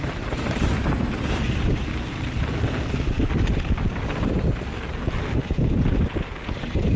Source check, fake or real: real